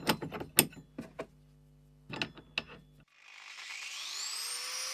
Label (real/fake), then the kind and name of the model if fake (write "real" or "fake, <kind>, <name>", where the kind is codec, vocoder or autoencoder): real